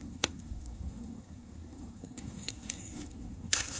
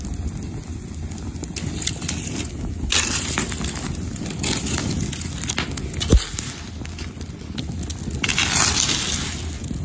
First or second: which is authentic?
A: second